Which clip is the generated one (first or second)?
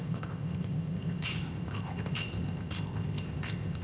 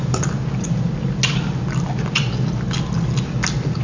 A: first